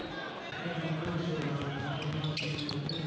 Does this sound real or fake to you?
real